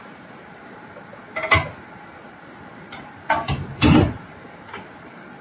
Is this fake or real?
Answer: real